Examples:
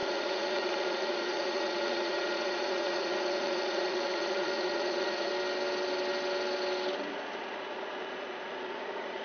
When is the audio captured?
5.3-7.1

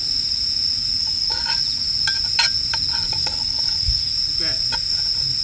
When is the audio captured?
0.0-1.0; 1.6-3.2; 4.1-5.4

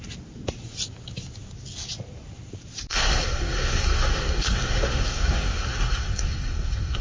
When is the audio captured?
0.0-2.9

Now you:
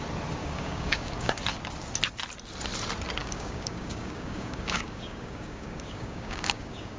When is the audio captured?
0.0-0.4; 1.4-3.2